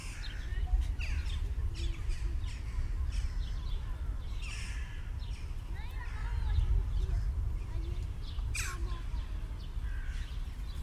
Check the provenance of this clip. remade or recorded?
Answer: recorded